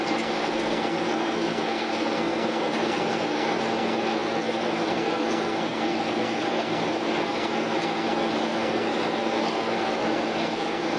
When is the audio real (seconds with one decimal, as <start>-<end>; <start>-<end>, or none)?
none